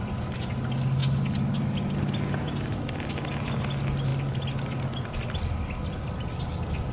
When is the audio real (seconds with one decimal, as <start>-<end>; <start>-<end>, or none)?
0.0-6.9